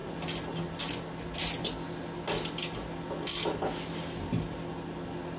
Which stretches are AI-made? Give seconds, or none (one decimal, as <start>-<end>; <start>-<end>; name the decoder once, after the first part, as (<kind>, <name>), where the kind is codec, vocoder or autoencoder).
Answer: none